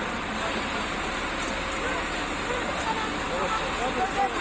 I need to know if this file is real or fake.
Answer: real